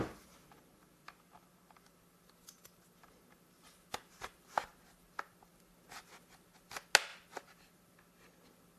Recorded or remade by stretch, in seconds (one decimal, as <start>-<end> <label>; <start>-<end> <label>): 0.0-8.8 recorded